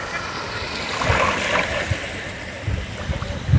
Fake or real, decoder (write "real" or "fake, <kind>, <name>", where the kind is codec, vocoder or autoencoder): real